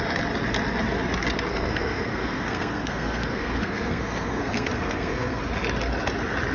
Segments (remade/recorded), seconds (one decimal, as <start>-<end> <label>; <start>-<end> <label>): 0.0-1.5 recorded; 1.5-5.4 remade; 5.4-6.5 recorded

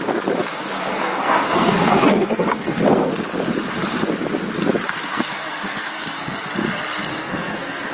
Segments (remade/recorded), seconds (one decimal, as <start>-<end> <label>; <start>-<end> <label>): 0.0-0.5 recorded; 0.5-3.1 remade; 3.1-5.1 recorded; 5.1-6.5 remade; 6.5-7.1 recorded; 7.1-7.9 remade